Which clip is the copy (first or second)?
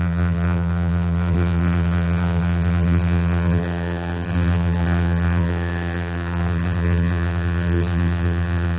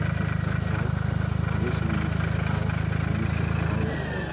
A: first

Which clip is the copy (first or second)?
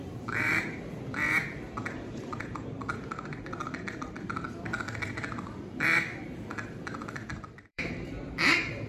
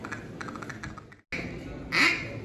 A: first